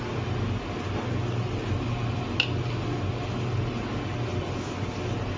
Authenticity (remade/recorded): recorded